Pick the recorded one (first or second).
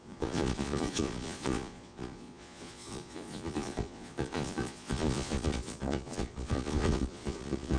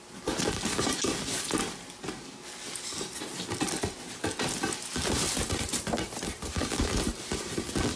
second